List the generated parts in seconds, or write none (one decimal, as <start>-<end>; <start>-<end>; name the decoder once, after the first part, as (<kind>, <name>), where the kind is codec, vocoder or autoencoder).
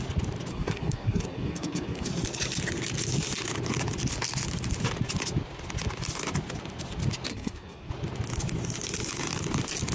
0.5-2.1 (codec, SNAC); 7.3-7.9